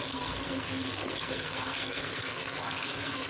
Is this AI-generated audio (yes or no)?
yes